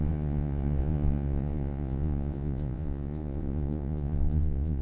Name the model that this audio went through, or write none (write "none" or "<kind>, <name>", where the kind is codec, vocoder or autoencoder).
vocoder, Vocos